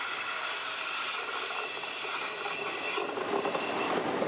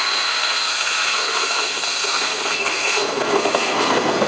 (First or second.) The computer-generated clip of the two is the second